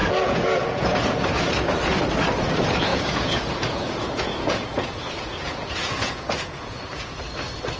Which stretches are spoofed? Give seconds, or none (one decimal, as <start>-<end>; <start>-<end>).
0.0-1.0; 2.9-7.2